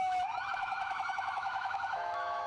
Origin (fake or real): fake